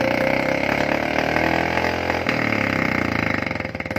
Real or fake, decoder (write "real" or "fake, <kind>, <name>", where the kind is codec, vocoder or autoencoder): real